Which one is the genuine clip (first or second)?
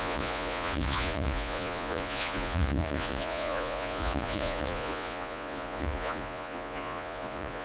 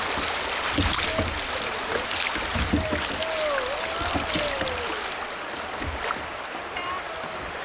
second